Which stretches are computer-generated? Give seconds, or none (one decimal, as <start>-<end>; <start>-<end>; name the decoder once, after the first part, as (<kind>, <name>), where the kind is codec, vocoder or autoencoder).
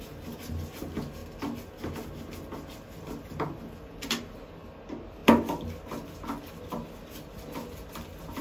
none